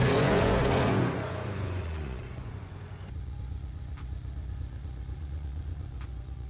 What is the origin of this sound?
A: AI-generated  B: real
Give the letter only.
A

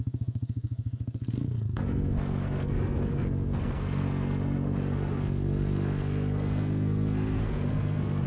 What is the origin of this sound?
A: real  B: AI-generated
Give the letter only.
B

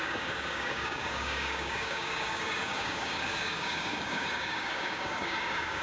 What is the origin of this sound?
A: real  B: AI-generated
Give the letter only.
B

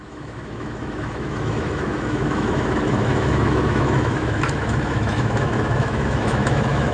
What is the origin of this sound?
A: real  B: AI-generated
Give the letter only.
B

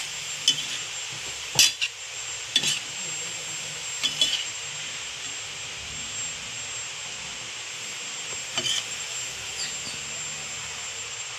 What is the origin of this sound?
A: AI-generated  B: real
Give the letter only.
B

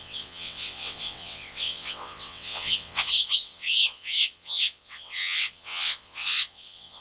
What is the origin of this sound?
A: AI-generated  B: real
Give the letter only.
A